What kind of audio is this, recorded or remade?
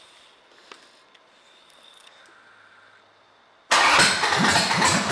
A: recorded